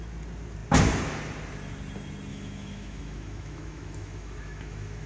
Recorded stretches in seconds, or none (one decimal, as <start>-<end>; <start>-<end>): 0.0-2.3